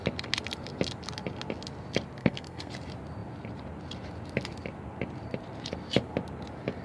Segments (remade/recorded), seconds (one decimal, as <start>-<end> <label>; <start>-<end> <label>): 0.0-2.2 recorded; 2.2-2.7 remade; 2.7-6.8 recorded